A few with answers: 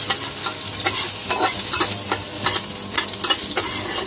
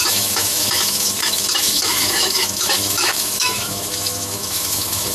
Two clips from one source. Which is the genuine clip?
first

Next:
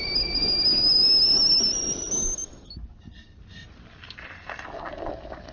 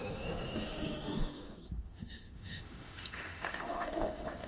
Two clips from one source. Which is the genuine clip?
first